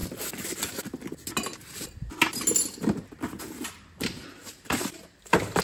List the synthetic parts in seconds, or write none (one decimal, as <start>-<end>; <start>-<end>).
4.4-5.6